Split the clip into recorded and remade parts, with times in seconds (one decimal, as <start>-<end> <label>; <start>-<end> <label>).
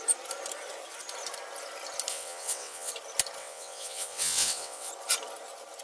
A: 0.0-2.1 recorded; 2.1-2.9 remade; 2.9-3.4 recorded; 3.4-4.9 remade; 4.9-5.8 recorded